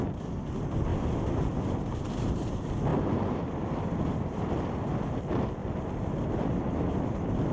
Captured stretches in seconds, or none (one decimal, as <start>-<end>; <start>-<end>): 0.0-0.9; 1.8-2.9; 4.5-5.6